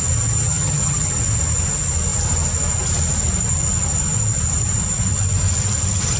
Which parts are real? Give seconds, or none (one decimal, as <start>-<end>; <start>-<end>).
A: 0.0-0.4; 1.1-6.2

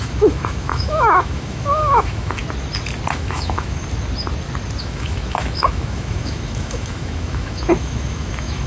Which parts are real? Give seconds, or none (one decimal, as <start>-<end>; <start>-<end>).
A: 2.4-3.1; 3.8-4.8

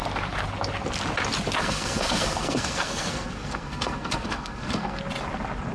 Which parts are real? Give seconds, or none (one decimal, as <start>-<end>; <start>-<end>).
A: 0.0-1.6; 5.0-5.7

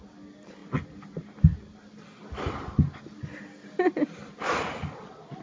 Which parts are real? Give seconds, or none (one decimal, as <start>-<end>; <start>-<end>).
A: 0.0-5.4

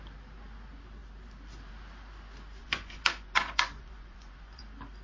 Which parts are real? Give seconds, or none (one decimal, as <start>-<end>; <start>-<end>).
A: 0.0-2.6; 4.6-5.0

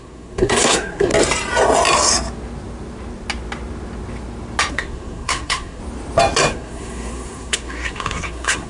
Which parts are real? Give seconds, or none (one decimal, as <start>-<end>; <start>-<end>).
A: 1.1-4.7; 5.8-6.5

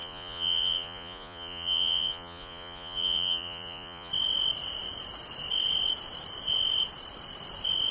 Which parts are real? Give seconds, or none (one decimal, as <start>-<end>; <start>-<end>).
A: 4.1-7.9

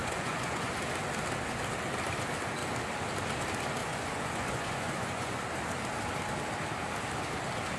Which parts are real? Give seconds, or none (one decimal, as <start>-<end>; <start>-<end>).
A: 0.7-3.8; 5.4-7.8